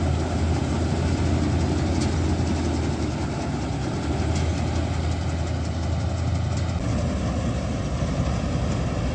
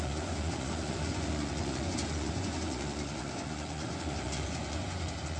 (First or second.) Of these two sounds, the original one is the first